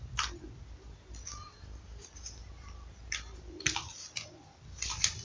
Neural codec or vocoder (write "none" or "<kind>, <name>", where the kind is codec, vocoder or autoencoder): none